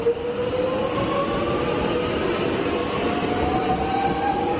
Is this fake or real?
real